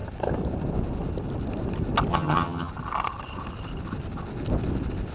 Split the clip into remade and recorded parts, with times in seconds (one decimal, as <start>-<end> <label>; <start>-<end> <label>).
0.0-2.1 recorded; 2.1-2.7 remade; 2.7-5.1 recorded